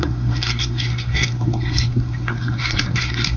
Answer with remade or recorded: remade